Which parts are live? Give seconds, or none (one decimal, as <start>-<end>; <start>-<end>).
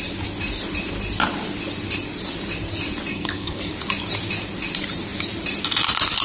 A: 0.0-3.1; 3.7-6.2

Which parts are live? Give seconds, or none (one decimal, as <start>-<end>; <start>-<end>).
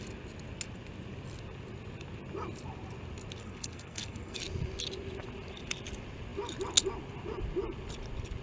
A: 0.0-3.4; 4.4-8.4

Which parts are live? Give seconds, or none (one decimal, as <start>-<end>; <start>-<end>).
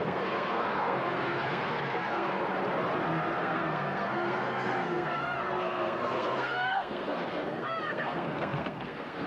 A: 2.4-3.4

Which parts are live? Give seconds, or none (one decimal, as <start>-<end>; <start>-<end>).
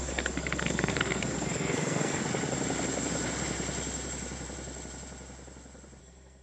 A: 2.2-6.0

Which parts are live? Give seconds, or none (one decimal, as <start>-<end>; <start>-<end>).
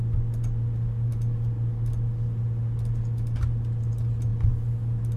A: 0.0-5.2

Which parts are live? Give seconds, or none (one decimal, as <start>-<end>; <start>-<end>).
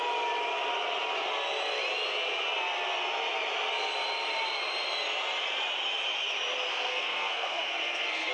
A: 0.0-6.7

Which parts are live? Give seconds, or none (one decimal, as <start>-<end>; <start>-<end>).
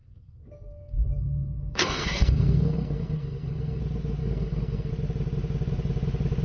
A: 3.8-4.2; 4.9-6.4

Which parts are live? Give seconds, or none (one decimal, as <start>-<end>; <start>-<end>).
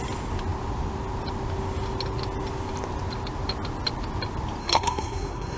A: 0.0-4.6